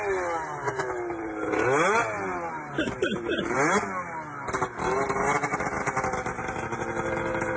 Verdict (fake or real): real